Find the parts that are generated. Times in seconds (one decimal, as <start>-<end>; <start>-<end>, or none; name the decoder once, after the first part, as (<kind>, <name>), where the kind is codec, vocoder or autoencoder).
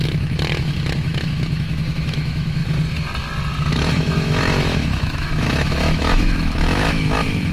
0.0-2.6 (autoencoder, DAC-VAE); 3.7-7.5